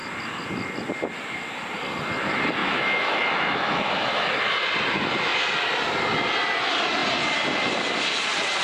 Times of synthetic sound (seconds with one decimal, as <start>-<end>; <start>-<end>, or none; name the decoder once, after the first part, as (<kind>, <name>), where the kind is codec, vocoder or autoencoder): 2.6-4.3 (autoencoder, DAC-VAE)